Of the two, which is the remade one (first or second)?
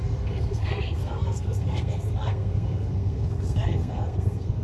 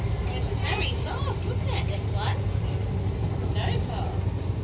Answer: first